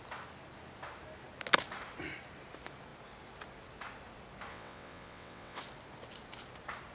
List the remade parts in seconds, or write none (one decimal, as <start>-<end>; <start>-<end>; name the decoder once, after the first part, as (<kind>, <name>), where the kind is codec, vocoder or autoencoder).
4.5-5.6 (vocoder, WaveNeXt)